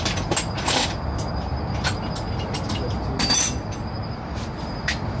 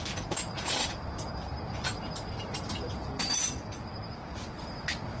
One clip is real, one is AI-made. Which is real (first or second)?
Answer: first